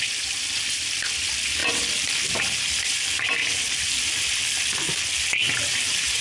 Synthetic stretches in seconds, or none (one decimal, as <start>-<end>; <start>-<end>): 0.0-1.6; 2.4-3.4; 5.7-6.2